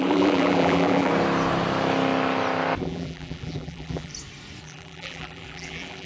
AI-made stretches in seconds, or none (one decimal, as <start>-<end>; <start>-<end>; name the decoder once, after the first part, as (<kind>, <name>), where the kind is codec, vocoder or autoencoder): 0.0-1.1 (vocoder, BigVGAN v2); 2.8-4.1; 4.6-6.1